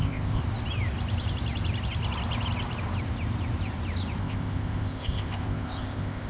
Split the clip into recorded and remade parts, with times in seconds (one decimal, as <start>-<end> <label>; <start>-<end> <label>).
0.0-0.4 remade; 0.4-4.2 recorded; 4.2-6.3 remade